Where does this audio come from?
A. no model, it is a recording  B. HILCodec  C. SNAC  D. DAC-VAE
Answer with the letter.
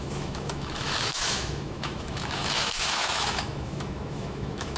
D